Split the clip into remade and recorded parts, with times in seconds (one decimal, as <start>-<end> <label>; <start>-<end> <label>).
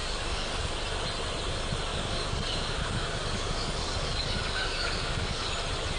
0.0-0.7 remade; 0.7-1.9 recorded; 1.9-5.5 remade; 5.5-6.0 recorded